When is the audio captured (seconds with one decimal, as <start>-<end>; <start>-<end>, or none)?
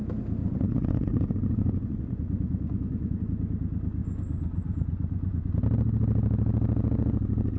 0.0-0.4; 3.2-4.0; 5.5-7.6